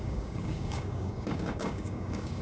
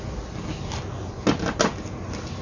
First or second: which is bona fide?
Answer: second